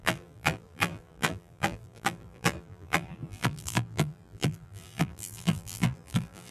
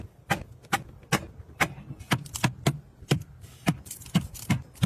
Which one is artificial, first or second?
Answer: first